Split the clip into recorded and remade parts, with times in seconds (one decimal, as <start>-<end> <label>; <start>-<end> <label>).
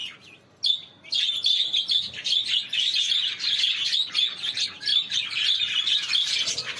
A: 0.0-4.1 recorded; 4.1-4.9 remade; 4.9-6.8 recorded